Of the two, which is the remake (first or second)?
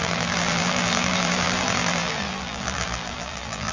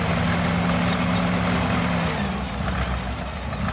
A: first